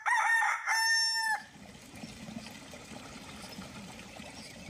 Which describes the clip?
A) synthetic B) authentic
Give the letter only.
B